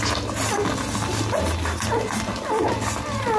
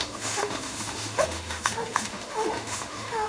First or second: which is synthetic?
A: second